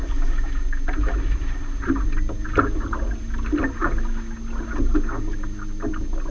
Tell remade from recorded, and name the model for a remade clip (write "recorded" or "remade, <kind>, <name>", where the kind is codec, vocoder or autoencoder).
recorded